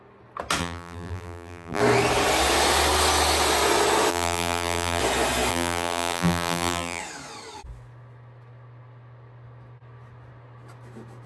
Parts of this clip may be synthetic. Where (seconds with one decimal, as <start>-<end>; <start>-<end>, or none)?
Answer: 0.6-1.8; 4.1-5.0; 5.5-7.0